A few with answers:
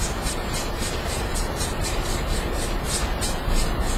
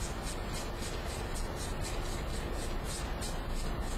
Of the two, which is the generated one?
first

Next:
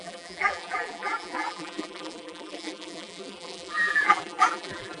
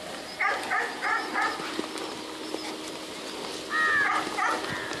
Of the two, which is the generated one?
first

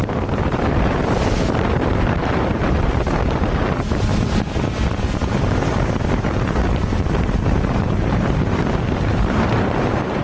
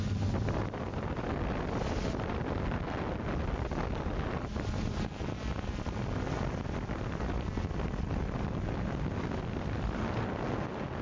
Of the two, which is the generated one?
first